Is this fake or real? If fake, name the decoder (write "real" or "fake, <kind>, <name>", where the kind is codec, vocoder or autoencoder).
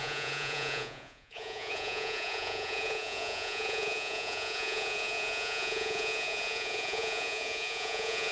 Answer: fake, vocoder, Vocos